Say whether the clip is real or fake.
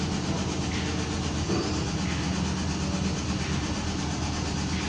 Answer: real